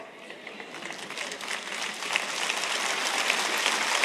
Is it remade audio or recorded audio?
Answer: recorded